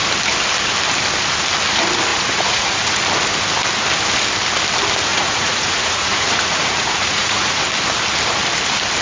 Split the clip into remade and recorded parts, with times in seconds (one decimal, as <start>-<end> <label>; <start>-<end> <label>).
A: 0.0-2.1 recorded; 2.1-3.0 remade; 3.0-5.1 recorded; 5.1-7.6 remade; 7.6-9.0 recorded